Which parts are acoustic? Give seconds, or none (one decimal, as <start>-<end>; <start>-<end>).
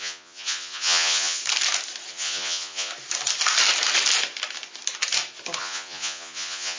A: 1.4-2.1; 2.9-5.6